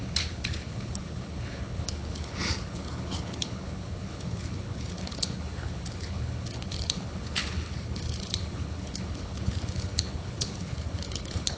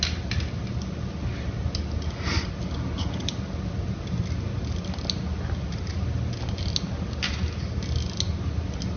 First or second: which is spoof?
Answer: first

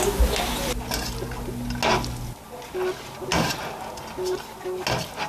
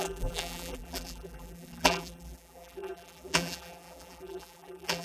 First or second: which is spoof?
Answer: second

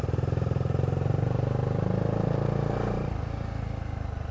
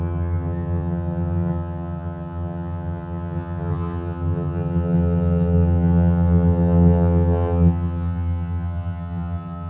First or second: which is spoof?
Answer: second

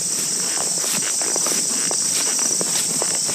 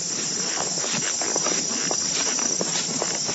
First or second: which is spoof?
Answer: first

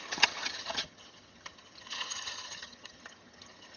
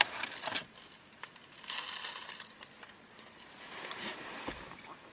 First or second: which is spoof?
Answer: first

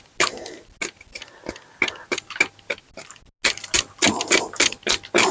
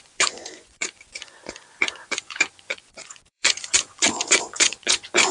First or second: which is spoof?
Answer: second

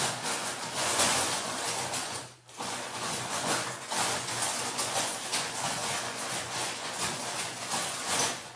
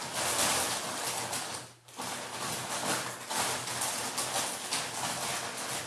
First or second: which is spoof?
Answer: first